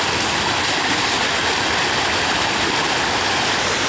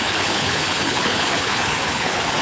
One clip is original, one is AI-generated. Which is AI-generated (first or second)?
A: second